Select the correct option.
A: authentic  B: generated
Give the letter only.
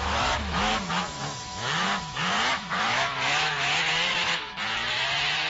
B